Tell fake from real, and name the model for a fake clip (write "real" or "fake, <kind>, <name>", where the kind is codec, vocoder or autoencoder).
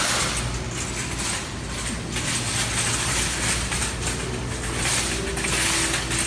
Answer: real